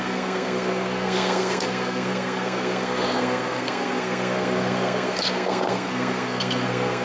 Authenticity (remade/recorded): remade